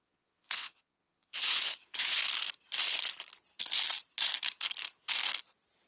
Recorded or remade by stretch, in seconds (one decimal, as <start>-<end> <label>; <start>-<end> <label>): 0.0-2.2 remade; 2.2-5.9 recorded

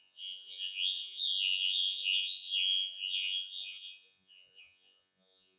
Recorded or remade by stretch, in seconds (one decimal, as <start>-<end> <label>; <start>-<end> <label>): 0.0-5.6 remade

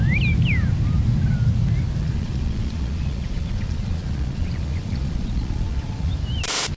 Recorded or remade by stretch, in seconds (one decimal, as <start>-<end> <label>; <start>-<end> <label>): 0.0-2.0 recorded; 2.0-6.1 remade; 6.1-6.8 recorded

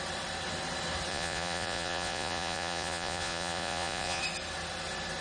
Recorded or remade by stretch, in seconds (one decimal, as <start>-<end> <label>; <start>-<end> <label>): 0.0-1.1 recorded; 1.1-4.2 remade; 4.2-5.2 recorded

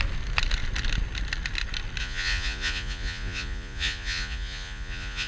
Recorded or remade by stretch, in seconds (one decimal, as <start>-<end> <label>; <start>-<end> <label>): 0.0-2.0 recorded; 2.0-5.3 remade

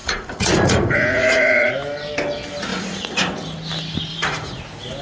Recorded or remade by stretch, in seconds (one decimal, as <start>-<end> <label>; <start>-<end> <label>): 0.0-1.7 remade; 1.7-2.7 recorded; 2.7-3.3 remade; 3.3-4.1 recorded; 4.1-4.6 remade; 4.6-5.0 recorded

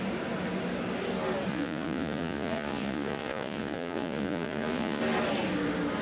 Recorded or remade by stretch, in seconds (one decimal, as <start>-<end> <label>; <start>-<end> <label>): 0.0-1.5 recorded; 1.5-5.0 remade; 5.0-6.0 recorded

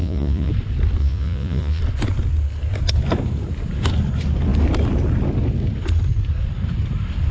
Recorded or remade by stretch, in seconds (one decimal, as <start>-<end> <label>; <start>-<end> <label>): 0.0-0.5 remade; 0.5-1.0 recorded; 1.0-1.8 remade; 1.8-7.3 recorded